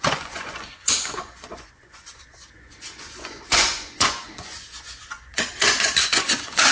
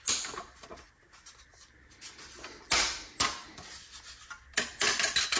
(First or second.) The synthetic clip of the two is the first